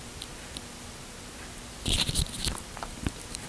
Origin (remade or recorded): recorded